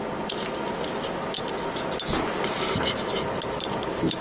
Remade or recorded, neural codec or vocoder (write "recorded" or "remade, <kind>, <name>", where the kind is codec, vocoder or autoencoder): recorded